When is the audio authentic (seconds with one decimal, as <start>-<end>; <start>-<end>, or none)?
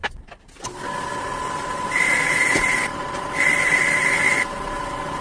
0.0-1.2